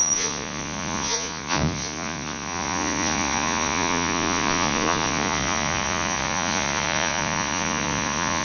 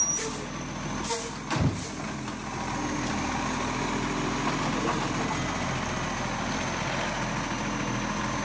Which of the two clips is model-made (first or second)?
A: first